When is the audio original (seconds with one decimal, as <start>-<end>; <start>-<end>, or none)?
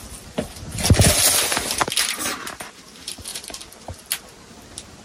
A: 0.0-5.0